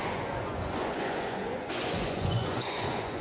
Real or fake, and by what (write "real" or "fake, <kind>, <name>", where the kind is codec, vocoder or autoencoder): fake, vocoder, Vocos